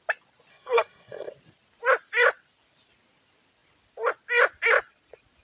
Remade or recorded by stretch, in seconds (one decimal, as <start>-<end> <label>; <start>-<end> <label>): 0.0-0.5 recorded; 0.5-1.3 remade; 1.3-5.4 recorded